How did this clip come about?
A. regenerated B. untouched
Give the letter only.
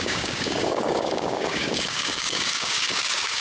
A